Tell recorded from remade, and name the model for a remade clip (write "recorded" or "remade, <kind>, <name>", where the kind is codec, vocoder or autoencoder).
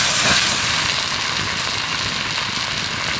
recorded